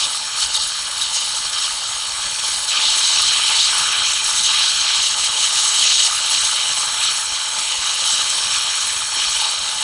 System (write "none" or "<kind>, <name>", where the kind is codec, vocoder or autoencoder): codec, HILCodec